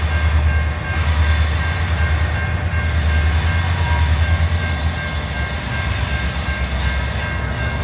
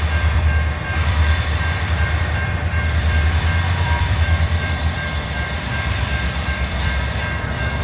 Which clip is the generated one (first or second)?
second